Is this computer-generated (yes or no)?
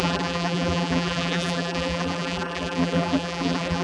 yes